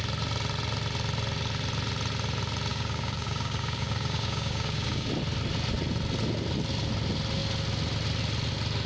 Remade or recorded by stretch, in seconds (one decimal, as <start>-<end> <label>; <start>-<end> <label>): 0.0-2.7 recorded; 2.7-5.1 remade; 5.1-8.9 recorded